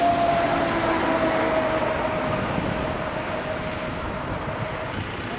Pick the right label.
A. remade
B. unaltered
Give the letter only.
B